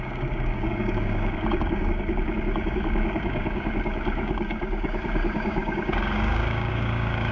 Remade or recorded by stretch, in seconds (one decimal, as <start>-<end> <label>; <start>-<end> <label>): 0.0-7.3 remade